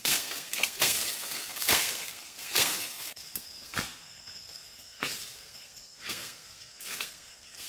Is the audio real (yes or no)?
no